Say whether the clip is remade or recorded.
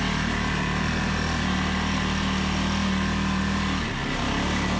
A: recorded